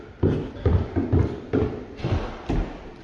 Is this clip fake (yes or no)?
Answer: no